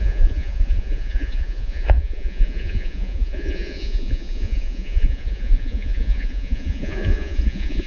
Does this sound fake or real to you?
fake